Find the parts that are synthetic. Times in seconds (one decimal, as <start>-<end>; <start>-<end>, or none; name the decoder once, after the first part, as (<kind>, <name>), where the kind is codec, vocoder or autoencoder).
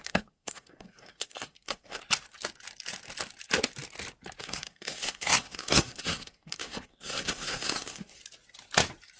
0.0-2.0 (codec, SNAC); 4.4-8.2